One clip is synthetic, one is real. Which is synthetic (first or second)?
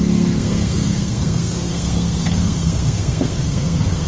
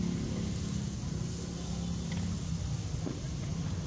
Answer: first